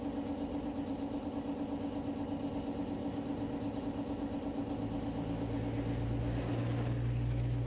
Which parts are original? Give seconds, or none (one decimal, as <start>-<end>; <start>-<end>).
0.0-0.5; 1.3-7.7